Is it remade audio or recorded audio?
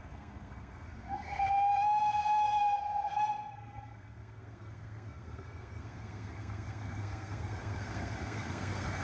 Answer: remade